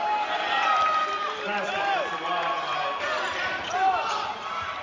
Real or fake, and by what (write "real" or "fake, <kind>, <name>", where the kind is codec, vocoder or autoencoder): real